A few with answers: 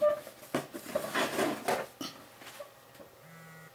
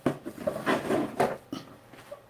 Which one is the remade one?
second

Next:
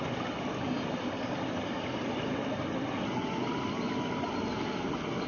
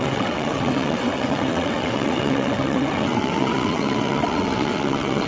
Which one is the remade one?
second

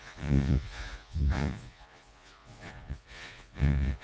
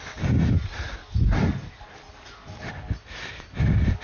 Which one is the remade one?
first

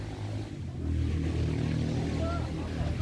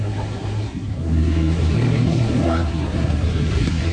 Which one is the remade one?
second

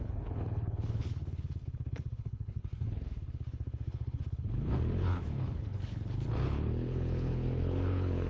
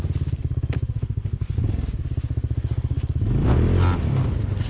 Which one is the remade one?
first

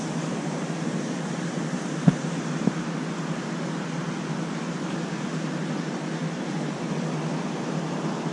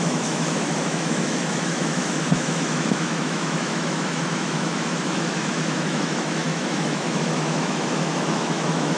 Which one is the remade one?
second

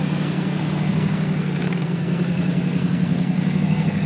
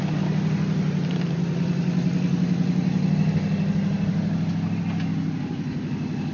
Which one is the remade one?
first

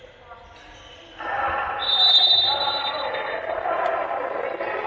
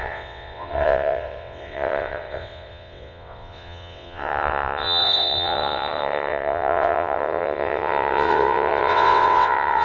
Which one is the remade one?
second